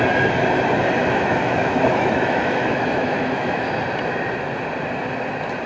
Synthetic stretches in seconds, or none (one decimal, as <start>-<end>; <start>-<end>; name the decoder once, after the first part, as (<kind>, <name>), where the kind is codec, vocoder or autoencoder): 1.0-3.7 (autoencoder, DAC-VAE)